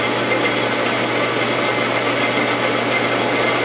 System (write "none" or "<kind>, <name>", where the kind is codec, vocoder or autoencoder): none